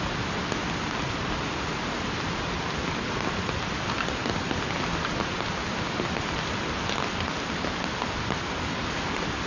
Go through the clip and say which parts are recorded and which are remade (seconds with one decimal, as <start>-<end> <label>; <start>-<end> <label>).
0.0-9.5 recorded

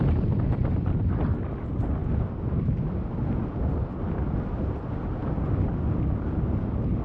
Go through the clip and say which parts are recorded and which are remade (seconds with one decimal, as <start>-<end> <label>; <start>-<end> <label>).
0.0-7.0 recorded

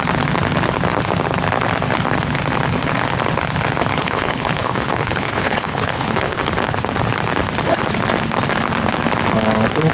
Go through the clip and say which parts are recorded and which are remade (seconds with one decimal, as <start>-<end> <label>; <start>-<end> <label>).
0.0-3.9 recorded; 3.9-6.4 remade; 6.4-9.9 recorded

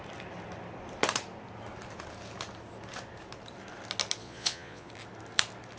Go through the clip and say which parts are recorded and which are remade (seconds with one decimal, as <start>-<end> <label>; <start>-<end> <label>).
0.0-4.2 recorded; 4.2-4.9 remade; 4.9-5.8 recorded

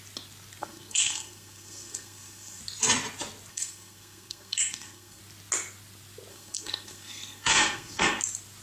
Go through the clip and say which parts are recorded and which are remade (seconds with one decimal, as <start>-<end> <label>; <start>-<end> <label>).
0.0-0.6 recorded; 0.6-2.6 remade; 2.6-3.5 recorded; 3.5-5.2 remade; 5.2-6.3 recorded; 6.3-8.2 remade; 8.2-8.6 recorded

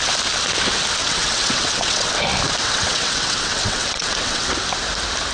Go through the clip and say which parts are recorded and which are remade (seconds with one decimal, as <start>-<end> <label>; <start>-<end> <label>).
0.0-1.0 recorded; 1.0-2.1 remade; 2.1-2.6 recorded; 2.6-4.5 remade; 4.5-5.3 recorded

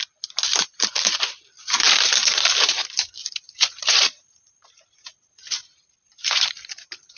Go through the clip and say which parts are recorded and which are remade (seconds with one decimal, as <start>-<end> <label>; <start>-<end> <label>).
0.0-0.5 recorded; 0.5-1.2 remade; 1.2-1.6 recorded; 1.6-2.6 remade; 2.6-3.2 recorded; 3.2-7.2 remade